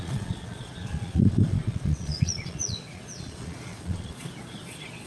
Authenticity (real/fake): fake